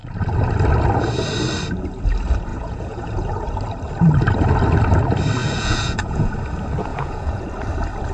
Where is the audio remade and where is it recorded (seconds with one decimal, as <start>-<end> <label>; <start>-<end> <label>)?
0.0-2.5 recorded; 2.5-3.3 remade; 3.3-5.4 recorded; 5.4-6.3 remade; 6.3-6.9 recorded; 6.9-7.5 remade; 7.5-8.1 recorded